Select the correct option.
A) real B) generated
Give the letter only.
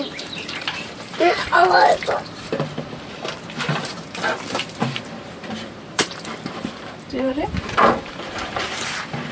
B